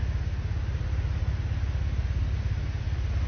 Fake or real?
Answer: real